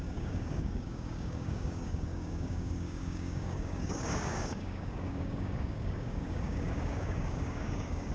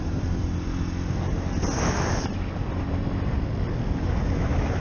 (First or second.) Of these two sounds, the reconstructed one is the first